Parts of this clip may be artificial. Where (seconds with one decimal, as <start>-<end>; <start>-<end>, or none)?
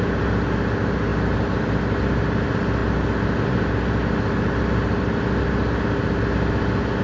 none